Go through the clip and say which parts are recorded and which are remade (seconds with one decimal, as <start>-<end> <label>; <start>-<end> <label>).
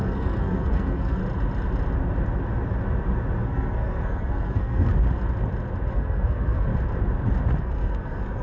0.0-1.2 remade; 1.2-3.4 recorded; 3.4-4.9 remade; 4.9-5.9 recorded; 5.9-6.7 remade; 6.7-7.6 recorded; 7.6-8.4 remade